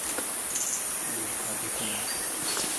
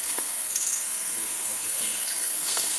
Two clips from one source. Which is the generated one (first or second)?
second